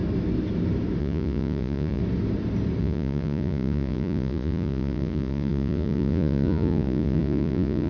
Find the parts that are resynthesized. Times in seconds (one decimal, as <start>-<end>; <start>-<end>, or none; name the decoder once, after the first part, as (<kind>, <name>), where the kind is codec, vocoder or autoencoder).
1.0-2.0 (vocoder, Vocos); 2.8-7.9